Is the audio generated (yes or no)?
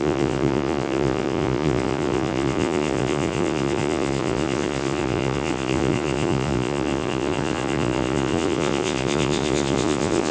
yes